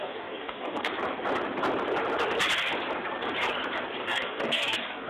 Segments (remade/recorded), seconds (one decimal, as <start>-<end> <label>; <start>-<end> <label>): 0.0-0.9 remade; 0.9-4.0 recorded; 4.0-5.1 remade